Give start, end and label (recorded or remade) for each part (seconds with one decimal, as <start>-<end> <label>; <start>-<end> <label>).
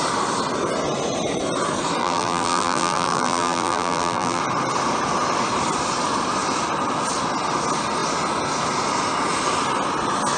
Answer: 0.0-2.0 recorded; 2.0-4.4 remade; 4.4-10.4 recorded